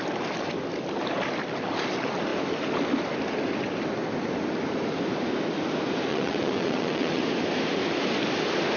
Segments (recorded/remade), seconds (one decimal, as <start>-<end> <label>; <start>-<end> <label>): 0.0-6.1 recorded; 6.1-7.2 remade; 7.2-8.8 recorded